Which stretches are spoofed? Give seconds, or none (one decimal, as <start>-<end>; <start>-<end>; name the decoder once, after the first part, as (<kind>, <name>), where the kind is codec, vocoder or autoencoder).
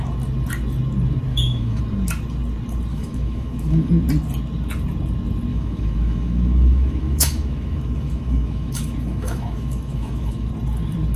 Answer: 1.3-1.8 (autoencoder, DAC-VAE); 2.9-3.9; 5.5-10.5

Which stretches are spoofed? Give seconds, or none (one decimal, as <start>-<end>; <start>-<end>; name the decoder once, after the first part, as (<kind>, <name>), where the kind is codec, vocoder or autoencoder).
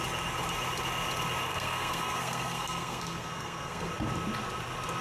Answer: 1.5-3.9 (codec, SNAC)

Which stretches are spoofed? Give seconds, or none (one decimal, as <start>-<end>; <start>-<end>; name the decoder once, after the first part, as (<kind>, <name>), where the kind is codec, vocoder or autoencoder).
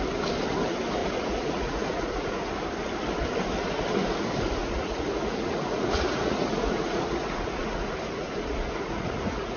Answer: 1.0-2.5 (vocoder, Vocos); 4.6-9.6